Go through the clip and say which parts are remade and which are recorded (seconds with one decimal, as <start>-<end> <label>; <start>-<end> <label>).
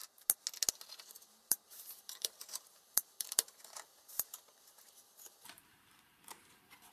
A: 0.0-0.7 recorded; 0.7-6.9 remade